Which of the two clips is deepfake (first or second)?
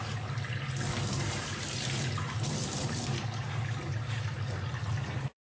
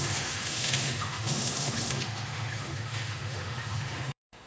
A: second